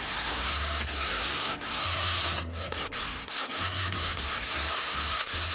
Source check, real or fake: fake